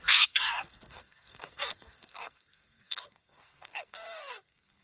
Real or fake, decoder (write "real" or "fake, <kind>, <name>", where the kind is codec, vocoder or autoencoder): fake, codec, SNAC